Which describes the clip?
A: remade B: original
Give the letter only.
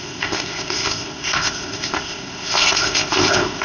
A